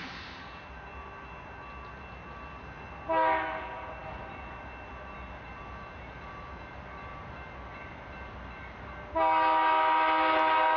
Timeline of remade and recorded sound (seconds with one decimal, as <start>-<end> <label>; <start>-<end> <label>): 0.0-10.8 recorded